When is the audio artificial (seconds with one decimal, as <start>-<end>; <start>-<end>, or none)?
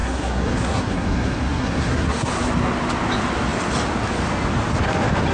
0.0-2.3